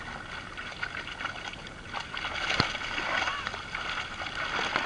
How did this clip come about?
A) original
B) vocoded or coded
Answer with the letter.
A